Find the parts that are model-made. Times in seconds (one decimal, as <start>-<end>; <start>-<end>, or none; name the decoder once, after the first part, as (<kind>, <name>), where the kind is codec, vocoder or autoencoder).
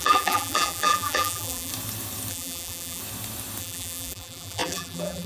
0.0-1.7 (vocoder, BigVGAN v2); 2.3-3.0; 3.6-5.3